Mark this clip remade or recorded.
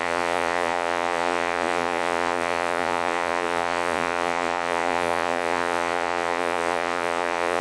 remade